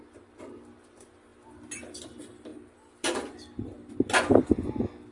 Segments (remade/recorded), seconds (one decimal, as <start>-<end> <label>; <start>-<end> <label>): 0.0-5.1 recorded